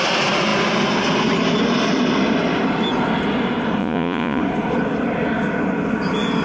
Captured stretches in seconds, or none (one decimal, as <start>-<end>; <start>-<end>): 0.0-3.8; 4.4-6.4